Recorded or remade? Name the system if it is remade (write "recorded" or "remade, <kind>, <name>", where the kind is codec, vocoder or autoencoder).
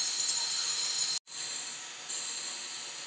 recorded